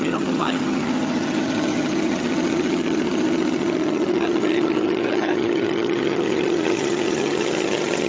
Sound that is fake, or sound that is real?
fake